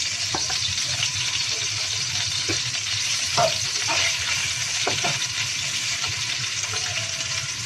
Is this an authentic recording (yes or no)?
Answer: no